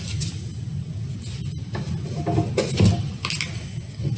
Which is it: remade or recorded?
recorded